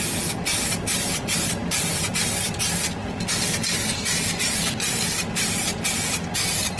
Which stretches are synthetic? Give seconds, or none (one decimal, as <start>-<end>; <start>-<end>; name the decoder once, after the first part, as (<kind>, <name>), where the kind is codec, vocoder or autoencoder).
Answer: none